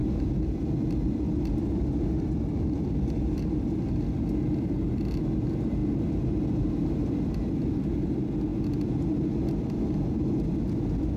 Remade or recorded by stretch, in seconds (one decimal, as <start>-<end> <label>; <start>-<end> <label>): 0.0-11.2 recorded